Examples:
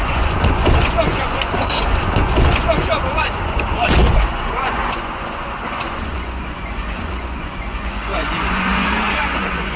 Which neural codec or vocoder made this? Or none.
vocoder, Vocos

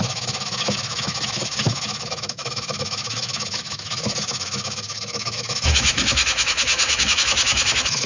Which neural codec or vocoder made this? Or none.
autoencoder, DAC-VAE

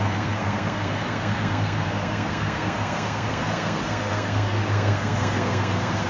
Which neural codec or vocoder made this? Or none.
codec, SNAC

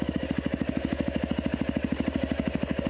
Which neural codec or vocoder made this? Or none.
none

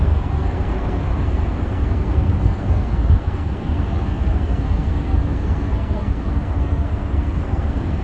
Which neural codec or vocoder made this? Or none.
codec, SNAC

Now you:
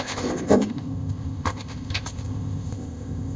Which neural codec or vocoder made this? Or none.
codec, ZipCodec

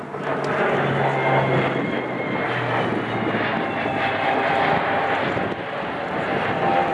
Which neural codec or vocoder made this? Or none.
none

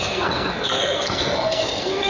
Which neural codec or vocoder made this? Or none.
codec, SNAC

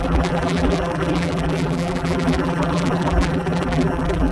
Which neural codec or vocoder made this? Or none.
vocoder, BigVGAN v2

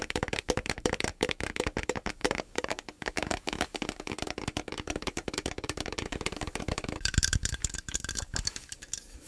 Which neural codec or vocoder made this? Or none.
codec, DAC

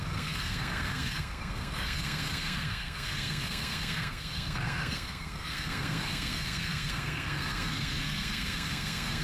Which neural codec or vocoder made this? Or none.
codec, SNAC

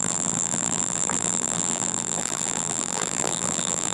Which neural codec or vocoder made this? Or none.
vocoder, BigVGAN v2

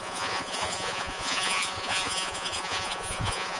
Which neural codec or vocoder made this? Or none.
vocoder, Vocos